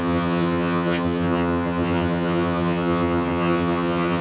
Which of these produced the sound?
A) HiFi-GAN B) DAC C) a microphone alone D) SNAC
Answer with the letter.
A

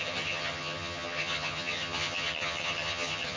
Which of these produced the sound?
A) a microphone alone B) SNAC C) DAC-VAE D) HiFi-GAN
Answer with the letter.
D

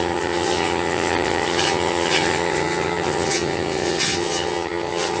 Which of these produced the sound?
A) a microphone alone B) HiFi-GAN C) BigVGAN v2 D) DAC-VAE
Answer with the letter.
B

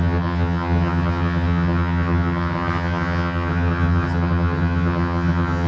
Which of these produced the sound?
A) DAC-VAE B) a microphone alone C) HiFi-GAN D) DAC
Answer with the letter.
C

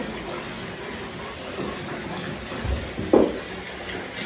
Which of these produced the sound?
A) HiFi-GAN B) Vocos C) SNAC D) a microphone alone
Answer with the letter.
D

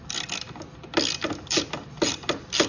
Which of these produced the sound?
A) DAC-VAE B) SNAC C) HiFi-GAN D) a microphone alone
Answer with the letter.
D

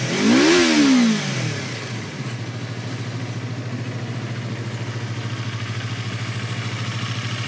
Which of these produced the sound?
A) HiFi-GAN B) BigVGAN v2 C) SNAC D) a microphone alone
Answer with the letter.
D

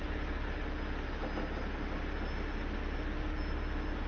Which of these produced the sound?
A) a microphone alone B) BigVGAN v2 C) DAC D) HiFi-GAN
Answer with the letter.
A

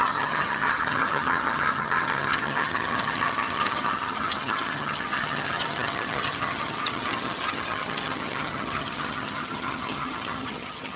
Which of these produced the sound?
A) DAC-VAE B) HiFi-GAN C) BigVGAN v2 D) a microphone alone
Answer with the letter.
B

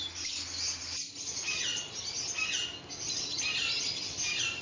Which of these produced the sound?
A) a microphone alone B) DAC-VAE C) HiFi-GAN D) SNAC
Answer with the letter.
A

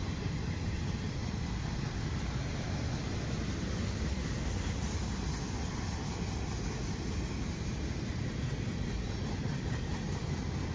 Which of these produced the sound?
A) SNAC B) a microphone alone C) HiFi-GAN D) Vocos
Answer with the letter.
B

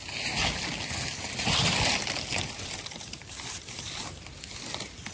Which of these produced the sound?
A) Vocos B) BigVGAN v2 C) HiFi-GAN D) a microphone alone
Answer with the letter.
D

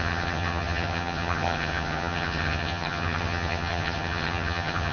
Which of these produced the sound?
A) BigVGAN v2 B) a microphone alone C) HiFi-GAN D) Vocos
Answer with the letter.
C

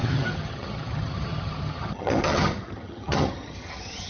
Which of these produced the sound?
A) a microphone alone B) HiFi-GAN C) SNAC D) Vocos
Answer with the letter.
B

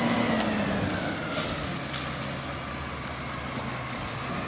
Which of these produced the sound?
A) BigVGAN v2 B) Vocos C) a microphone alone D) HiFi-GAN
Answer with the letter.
C